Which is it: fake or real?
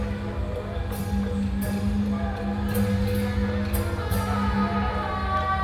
real